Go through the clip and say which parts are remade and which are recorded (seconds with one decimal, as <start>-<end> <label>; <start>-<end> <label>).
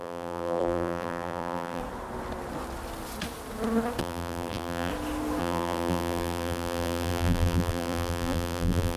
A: 0.0-1.8 remade; 1.8-4.0 recorded; 4.0-4.9 remade; 4.9-5.4 recorded; 5.4-9.0 remade